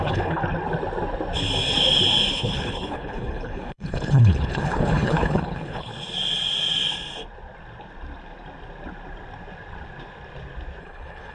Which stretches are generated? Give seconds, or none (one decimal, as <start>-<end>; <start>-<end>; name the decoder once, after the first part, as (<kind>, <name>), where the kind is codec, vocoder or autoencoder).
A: 0.0-0.4 (codec, HILCodec); 2.3-5.9; 10.8-11.3